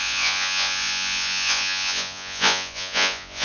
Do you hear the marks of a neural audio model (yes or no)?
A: yes